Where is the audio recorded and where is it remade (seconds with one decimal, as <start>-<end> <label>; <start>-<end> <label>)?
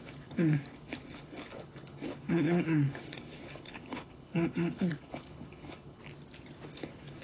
0.0-6.0 remade; 6.0-6.7 recorded; 6.7-7.2 remade